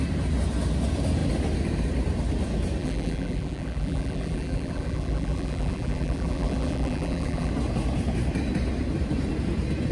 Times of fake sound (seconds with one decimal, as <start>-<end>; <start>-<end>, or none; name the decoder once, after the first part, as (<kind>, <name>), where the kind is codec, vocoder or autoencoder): 2.8-7.5 (vocoder, BigVGAN v2)